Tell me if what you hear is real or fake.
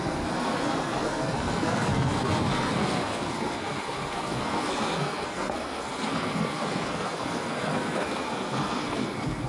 fake